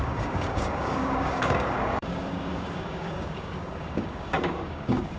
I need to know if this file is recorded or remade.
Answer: remade